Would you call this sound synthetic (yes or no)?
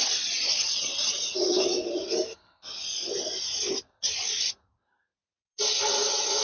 no